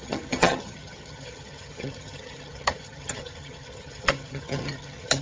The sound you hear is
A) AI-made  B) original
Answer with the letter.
A